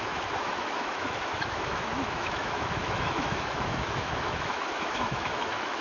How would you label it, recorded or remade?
remade